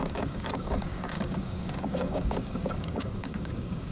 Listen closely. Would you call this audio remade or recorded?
remade